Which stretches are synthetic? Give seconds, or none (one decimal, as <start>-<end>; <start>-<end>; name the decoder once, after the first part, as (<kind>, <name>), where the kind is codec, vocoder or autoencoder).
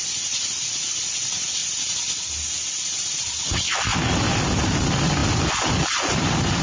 none